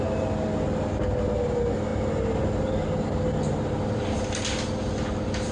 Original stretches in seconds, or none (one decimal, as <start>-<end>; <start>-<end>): 0.0-5.5